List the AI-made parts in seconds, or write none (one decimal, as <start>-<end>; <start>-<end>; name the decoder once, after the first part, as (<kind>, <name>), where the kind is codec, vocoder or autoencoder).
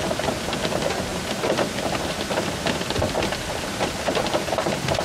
1.1-4.1 (vocoder, BigVGAN v2)